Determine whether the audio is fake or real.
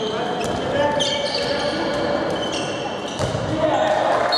real